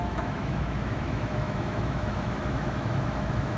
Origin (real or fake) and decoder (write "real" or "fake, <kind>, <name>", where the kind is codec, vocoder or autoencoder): fake, autoencoder, DAC-VAE